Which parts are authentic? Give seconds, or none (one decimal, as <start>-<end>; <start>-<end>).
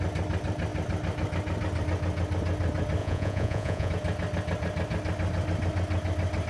0.0-3.0; 3.9-6.5